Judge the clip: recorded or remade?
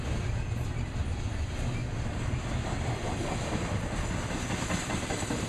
recorded